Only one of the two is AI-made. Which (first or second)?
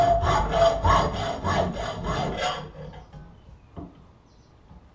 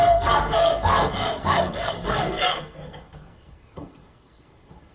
second